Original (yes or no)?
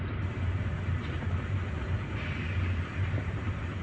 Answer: yes